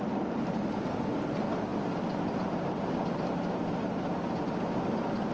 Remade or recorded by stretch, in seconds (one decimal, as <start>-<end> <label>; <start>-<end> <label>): 0.0-5.3 recorded